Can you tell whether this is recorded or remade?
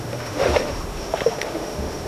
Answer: remade